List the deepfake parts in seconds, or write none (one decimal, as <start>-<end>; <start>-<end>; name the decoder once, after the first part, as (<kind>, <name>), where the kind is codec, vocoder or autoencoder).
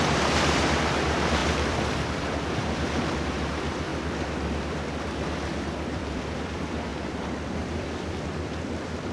0.0-3.9 (vocoder, BigVGAN v2); 6.1-6.9; 7.7-9.1